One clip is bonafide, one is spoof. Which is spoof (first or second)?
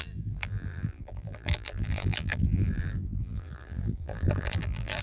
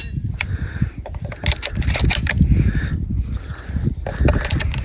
first